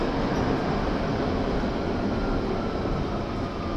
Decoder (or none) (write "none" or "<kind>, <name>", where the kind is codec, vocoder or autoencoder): none